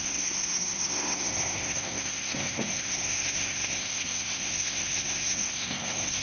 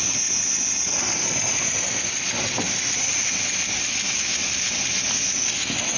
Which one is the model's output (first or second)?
first